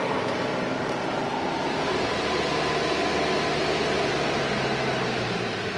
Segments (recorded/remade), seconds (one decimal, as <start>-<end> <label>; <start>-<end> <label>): 0.0-0.5 remade; 0.5-1.3 recorded; 1.3-2.1 remade; 2.1-5.0 recorded; 5.0-5.8 remade